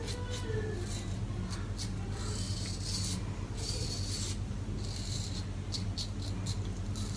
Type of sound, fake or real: real